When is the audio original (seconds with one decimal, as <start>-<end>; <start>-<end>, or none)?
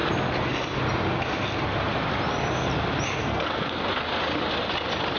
0.0-3.2; 3.8-5.2